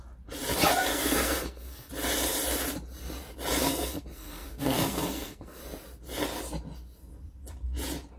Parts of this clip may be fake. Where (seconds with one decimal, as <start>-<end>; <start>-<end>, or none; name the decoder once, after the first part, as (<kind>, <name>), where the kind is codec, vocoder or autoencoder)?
0.9-1.9 (codec, SNAC); 3.6-5.6